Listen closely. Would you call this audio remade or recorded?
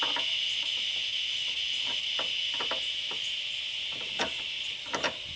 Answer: recorded